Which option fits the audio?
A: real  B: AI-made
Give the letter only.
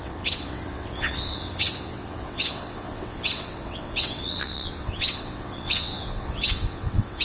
B